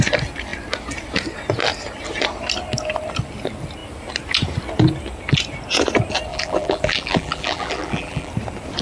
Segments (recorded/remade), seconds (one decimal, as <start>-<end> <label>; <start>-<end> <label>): 0.0-6.3 recorded; 6.3-8.3 remade; 8.3-8.8 recorded